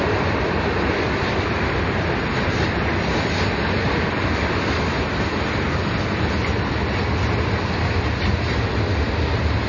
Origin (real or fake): real